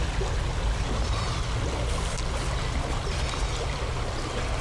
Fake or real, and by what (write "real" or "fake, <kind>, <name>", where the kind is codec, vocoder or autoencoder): real